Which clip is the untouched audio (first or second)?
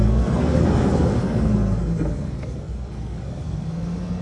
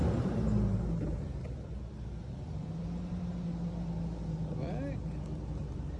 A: second